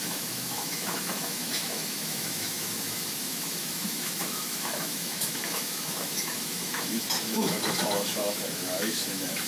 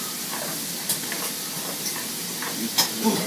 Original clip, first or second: second